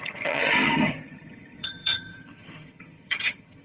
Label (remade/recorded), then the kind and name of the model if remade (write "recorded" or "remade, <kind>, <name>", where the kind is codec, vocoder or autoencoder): remade, vocoder, HiFi-GAN